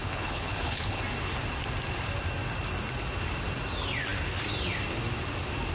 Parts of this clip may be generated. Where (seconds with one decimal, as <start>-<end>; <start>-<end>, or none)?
0.0-1.0

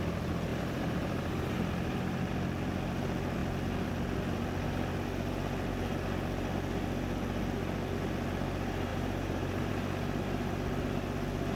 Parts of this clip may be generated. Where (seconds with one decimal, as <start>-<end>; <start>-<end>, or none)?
0.5-2.3; 8.9-9.7

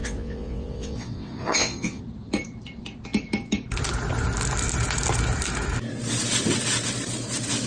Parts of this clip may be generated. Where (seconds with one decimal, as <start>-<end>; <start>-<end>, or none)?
0.0-2.0